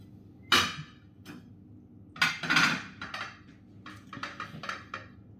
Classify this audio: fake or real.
real